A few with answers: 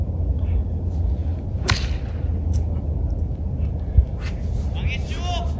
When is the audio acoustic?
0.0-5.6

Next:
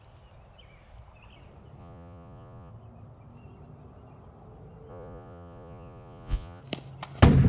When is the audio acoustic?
0.0-1.8; 2.7-4.9; 6.6-7.5

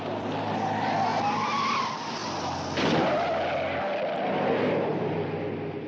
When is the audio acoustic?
0.0-5.9